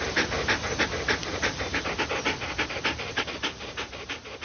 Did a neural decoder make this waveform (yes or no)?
no